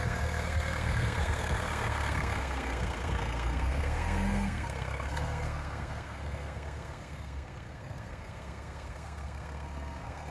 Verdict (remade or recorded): remade